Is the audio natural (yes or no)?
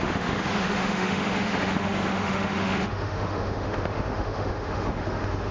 no